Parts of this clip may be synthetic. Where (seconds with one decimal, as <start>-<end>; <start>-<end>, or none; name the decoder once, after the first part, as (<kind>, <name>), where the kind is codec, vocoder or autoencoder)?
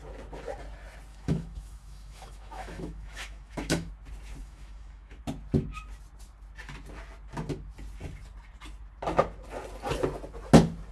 1.1-3.9 (autoencoder, DAC-VAE); 4.4-5.2